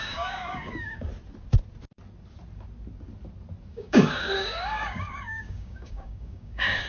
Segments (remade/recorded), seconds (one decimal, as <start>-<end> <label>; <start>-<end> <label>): 0.0-1.1 remade; 1.1-3.7 recorded; 3.7-6.9 remade